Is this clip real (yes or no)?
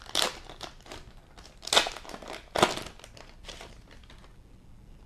yes